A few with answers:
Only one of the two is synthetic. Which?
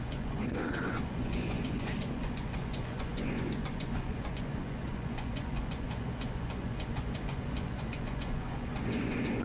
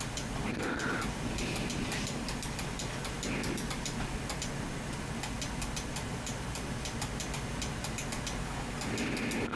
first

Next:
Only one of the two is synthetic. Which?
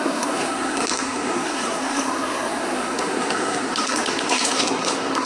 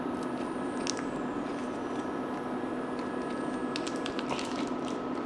first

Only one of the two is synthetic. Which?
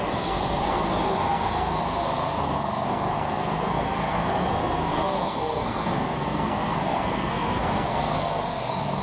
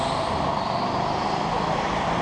first